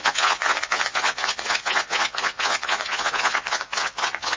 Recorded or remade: remade